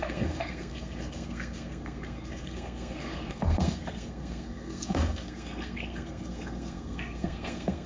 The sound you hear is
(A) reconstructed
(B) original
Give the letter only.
A